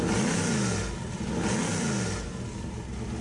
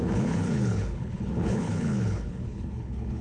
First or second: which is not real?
second